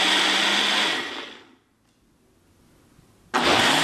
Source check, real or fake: real